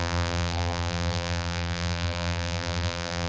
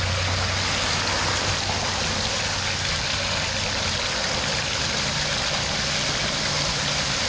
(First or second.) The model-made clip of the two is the first